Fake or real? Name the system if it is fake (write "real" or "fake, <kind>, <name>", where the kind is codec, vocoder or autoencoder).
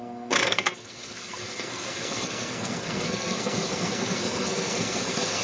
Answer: fake, codec, SNAC